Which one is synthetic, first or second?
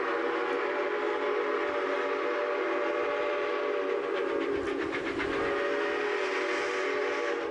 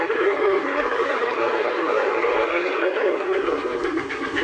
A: second